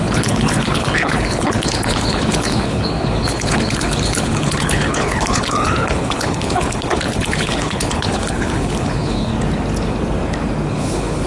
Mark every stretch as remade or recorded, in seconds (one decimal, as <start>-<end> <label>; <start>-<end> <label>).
0.0-9.3 remade; 9.3-10.7 recorded; 10.7-11.3 remade